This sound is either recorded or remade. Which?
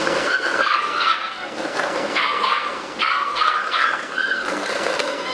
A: remade